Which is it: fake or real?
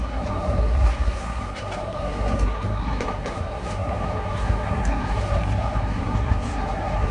fake